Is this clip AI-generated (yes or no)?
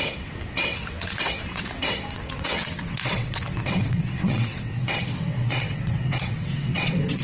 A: yes